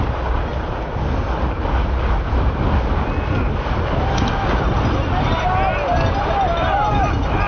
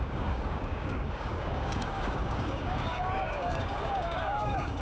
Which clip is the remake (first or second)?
second